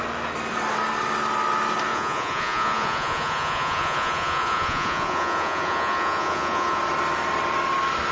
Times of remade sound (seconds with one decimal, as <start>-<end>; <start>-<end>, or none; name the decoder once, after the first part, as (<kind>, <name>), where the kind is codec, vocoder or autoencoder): 1.9-6.8 (vocoder, Vocos)

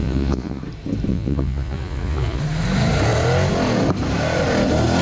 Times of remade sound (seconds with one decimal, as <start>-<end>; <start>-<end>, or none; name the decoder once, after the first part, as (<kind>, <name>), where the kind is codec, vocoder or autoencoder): 0.0-0.6 (vocoder, Vocos); 1.1-2.4